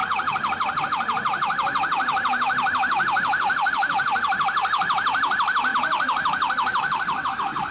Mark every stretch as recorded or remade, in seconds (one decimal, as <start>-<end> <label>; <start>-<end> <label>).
0.0-5.7 recorded; 5.7-7.3 remade; 7.3-7.7 recorded

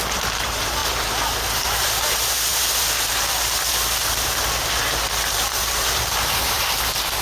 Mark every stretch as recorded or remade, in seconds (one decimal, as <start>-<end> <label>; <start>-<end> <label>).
0.0-7.2 remade

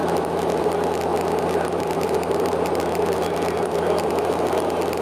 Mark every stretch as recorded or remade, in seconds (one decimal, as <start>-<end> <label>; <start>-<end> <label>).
0.0-0.6 remade; 0.6-1.1 recorded; 1.1-4.1 remade; 4.1-5.0 recorded